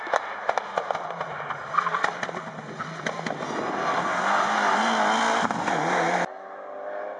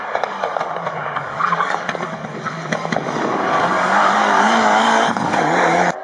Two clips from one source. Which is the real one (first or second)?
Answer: first